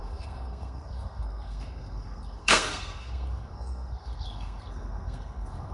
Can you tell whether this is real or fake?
fake